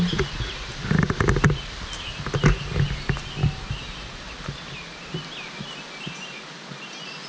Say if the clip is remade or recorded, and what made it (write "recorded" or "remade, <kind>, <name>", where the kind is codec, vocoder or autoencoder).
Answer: recorded